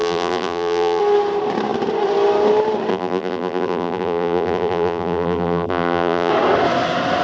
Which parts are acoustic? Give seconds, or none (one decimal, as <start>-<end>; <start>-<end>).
1.0-2.9; 6.3-7.2

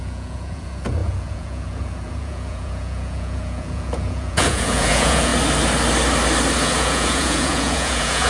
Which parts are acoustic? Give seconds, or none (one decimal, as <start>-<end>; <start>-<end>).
5.3-6.6

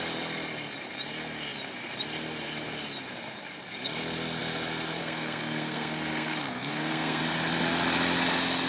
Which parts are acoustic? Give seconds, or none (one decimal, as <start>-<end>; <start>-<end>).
0.0-5.0; 7.2-8.7

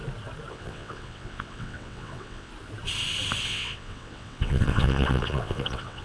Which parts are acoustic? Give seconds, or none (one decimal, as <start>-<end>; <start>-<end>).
0.0-0.5; 2.5-3.4

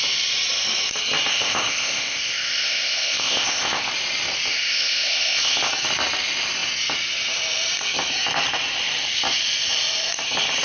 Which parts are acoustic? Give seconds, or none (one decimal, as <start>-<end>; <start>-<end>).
0.0-1.3; 3.9-4.5; 5.7-10.6

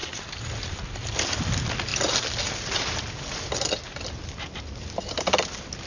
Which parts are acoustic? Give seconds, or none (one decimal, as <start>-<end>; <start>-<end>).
0.7-5.9

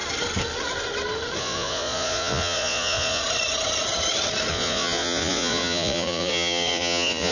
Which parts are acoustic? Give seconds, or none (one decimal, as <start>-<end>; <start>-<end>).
0.0-1.4; 3.2-4.5

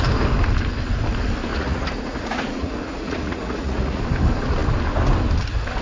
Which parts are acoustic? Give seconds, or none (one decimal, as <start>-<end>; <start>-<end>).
0.0-1.5; 4.0-5.8